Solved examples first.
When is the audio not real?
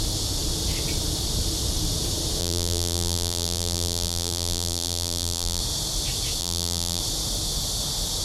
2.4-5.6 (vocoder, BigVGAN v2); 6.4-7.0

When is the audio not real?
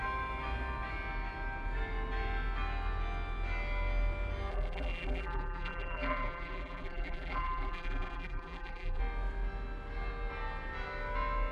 4.5-9.0 (vocoder, BigVGAN v2)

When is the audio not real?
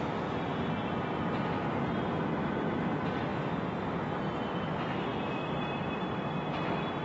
0.5-1.6 (vocoder, BigVGAN v2); 2.4-2.9; 5.1-6.3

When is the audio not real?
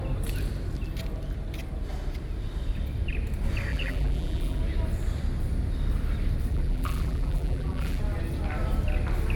3.7-4.6 (vocoder, BigVGAN v2); 6.5-8.0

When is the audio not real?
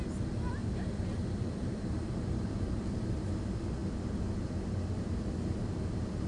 0.6-3.3 (vocoder, BigVGAN v2)